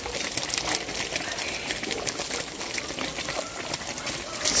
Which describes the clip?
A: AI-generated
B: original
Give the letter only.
B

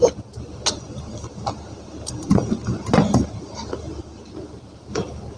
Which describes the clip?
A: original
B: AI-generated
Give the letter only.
A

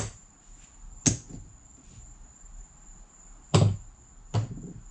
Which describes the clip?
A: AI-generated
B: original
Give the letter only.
B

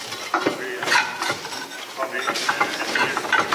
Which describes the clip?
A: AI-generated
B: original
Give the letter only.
B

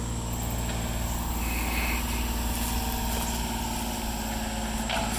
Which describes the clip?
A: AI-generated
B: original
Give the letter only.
B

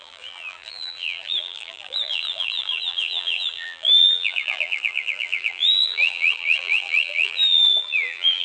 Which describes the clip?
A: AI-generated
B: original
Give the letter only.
A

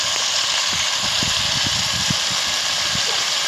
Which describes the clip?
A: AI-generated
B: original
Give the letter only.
A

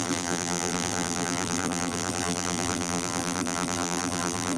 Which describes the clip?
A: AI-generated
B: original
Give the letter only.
A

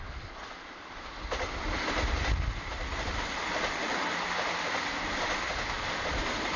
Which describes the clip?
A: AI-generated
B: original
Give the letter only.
B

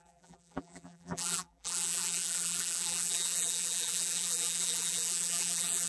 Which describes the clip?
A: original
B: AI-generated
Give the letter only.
B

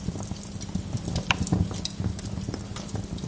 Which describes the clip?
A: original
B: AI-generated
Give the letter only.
A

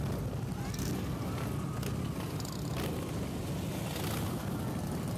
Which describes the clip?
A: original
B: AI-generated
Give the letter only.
A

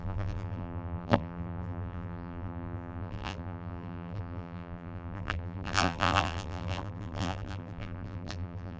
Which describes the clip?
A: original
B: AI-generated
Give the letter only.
B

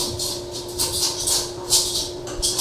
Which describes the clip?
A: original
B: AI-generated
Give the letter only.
B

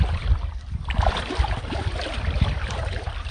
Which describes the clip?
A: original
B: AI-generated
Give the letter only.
B